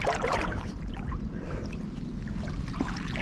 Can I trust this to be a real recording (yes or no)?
yes